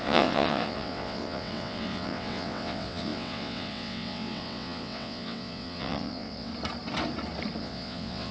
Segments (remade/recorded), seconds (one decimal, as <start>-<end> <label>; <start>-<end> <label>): 0.0-6.5 remade; 6.5-7.6 recorded; 7.6-8.3 remade